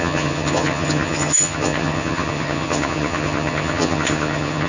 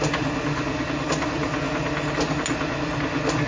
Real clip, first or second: second